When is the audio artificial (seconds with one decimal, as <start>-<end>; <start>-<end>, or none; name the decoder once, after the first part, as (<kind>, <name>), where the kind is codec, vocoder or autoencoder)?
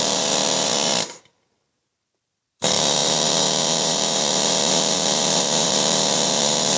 0.0-6.8 (vocoder, BigVGAN v2)